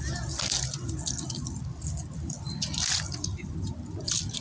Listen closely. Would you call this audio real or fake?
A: real